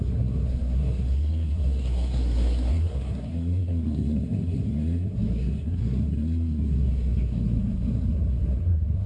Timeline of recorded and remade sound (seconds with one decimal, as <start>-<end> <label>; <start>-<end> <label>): 0.0-9.1 remade